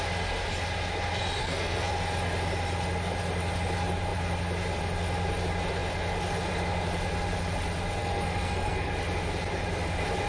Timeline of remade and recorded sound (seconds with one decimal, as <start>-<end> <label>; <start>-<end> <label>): 0.0-1.4 recorded; 1.4-1.9 remade; 1.9-8.0 recorded; 8.0-8.9 remade; 8.9-10.3 recorded